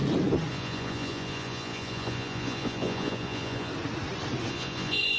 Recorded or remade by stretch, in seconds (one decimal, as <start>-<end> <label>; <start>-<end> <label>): 0.0-0.5 recorded; 0.5-3.7 remade; 3.7-4.5 recorded; 4.5-5.2 remade